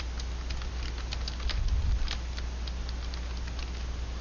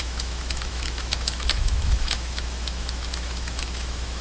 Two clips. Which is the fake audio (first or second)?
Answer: second